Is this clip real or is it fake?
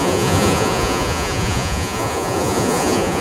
fake